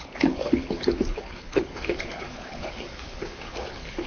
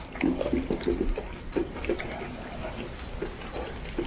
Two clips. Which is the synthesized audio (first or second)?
first